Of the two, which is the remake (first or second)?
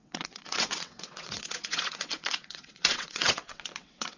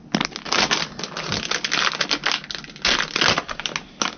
first